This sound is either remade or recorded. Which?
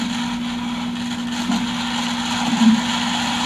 recorded